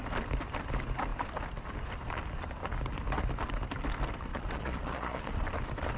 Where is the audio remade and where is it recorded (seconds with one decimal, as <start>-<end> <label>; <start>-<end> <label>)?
0.0-4.3 recorded; 4.3-5.5 remade; 5.5-6.0 recorded